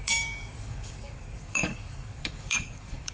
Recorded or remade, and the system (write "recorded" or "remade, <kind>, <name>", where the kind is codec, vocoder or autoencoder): remade, codec, DAC